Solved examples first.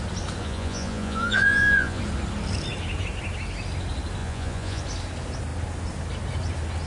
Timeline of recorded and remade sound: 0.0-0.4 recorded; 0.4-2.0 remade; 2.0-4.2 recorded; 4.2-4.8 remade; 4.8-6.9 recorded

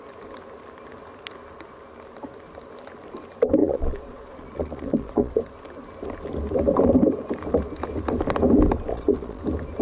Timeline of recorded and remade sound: 0.0-3.6 recorded; 3.6-5.4 remade; 5.4-8.9 recorded; 8.9-9.4 remade; 9.4-9.8 recorded

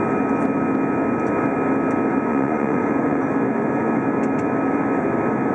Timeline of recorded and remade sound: 0.0-2.3 recorded; 2.3-3.2 remade; 3.2-5.5 recorded

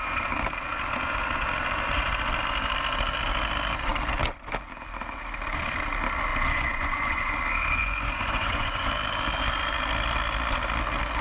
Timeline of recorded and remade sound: 0.0-6.3 recorded; 6.3-7.3 remade; 7.3-7.8 recorded; 7.8-8.9 remade; 8.9-11.2 recorded

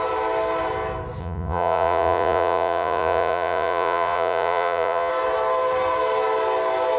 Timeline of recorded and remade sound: 0.0-1.2 recorded; 1.2-5.1 remade; 5.1-7.0 recorded

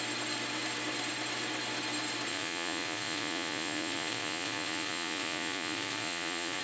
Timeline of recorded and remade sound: 0.0-2.3 recorded; 2.3-6.6 remade

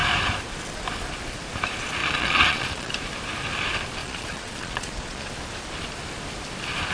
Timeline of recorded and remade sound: 0.0-2.0 recorded; 2.0-2.9 remade; 2.9-4.0 recorded; 4.0-5.3 remade; 5.3-6.9 recorded